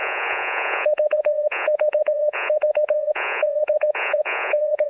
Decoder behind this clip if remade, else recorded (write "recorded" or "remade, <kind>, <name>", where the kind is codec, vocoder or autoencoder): remade, vocoder, Vocos